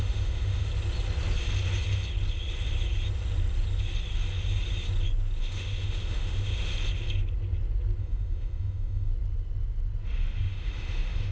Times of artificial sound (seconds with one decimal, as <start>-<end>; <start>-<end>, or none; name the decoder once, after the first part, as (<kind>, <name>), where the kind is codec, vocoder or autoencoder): 0.0-0.7 (autoencoder, DAC-VAE); 5.4-6.7; 8.0-9.1; 10.4-11.3